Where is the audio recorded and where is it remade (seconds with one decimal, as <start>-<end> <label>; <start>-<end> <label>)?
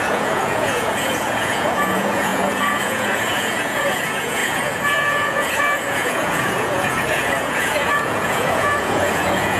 0.0-9.6 remade